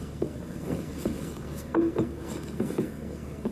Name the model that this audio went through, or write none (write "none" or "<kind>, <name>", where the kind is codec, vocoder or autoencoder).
codec, SNAC